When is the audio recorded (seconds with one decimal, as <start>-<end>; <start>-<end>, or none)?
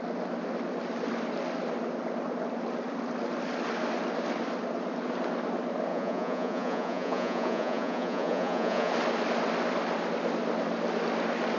0.0-5.9; 8.9-11.6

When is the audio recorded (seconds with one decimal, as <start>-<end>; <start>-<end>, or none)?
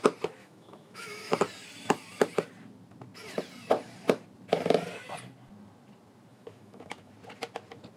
0.0-0.4; 1.4-6.3; 7.1-8.0